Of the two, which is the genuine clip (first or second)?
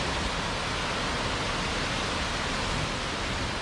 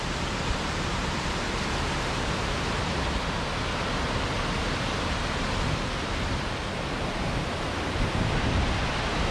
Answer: first